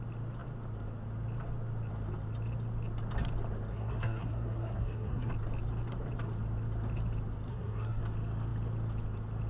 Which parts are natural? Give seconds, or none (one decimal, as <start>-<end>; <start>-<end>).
0.0-3.7; 5.3-7.5; 8.0-9.5